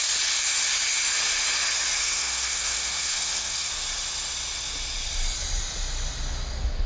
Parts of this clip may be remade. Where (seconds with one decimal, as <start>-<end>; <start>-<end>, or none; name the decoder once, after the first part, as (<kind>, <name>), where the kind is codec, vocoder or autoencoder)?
2.0-3.7 (codec, SNAC)